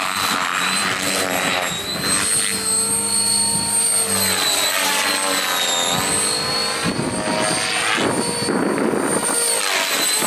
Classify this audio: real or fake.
real